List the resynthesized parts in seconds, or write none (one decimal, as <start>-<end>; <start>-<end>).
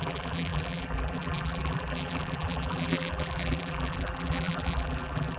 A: 0.0-5.4